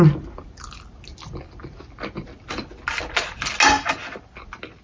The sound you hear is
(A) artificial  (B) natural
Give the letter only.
B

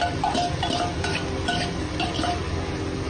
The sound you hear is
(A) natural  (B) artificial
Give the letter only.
A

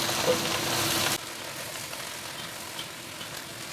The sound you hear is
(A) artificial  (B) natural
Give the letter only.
B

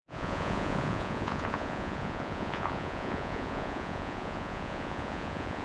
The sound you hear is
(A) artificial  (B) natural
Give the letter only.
A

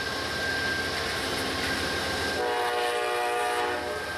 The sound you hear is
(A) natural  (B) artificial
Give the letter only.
A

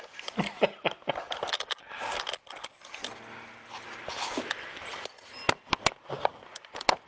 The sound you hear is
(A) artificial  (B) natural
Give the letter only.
B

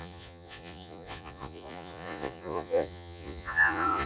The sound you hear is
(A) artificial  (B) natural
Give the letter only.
A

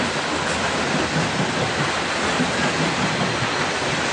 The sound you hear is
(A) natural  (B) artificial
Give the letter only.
A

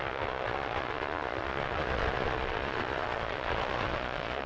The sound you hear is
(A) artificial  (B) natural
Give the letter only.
A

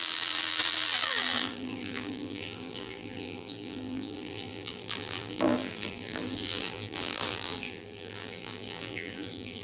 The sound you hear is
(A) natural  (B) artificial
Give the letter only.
B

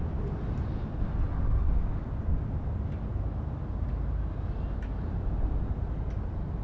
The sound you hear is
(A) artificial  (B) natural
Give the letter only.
B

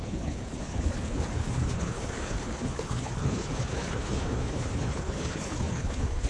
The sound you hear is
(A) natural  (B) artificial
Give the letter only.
B